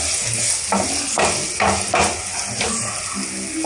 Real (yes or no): yes